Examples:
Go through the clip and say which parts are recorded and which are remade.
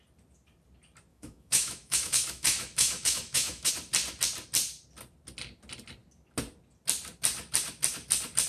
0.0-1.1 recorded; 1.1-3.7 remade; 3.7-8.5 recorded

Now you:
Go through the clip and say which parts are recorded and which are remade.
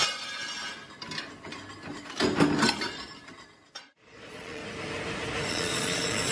0.0-3.8 recorded; 3.8-4.6 remade; 4.6-5.5 recorded; 5.5-6.3 remade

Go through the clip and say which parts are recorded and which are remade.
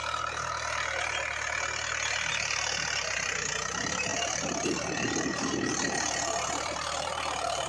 0.0-4.1 recorded; 4.1-7.7 remade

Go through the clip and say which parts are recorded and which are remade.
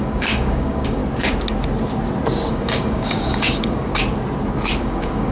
0.0-1.0 remade; 1.0-2.5 recorded; 2.5-3.9 remade; 3.9-4.8 recorded; 4.8-5.3 remade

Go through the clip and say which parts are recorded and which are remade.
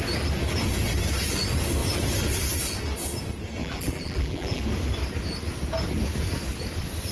0.0-3.6 recorded; 3.6-4.6 remade; 4.6-7.1 recorded